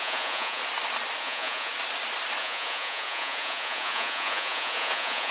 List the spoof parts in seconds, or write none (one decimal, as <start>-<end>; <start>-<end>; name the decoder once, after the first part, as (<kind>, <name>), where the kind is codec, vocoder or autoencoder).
0.0-0.6 (vocoder, Vocos); 1.2-1.7; 2.4-5.3